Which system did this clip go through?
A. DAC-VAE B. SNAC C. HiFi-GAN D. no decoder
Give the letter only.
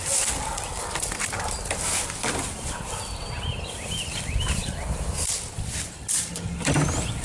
D